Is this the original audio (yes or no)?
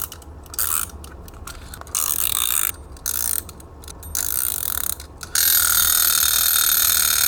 yes